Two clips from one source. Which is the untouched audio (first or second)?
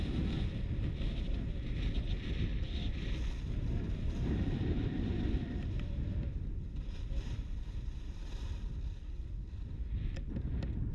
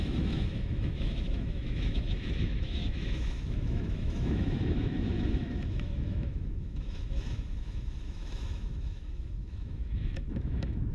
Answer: first